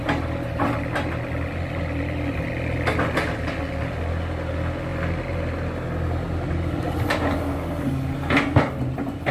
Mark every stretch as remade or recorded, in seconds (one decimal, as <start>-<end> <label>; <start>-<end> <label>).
0.0-9.3 recorded